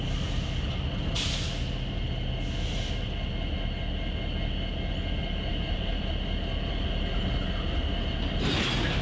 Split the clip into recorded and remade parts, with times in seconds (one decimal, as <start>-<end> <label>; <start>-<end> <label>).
0.0-5.5 recorded; 5.5-6.1 remade; 6.1-9.0 recorded